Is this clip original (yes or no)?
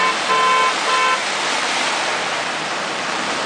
yes